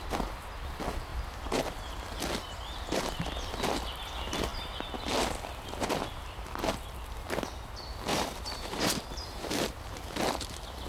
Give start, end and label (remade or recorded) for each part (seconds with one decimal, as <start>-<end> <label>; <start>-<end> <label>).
0.0-8.1 recorded; 8.1-9.6 remade; 9.6-10.9 recorded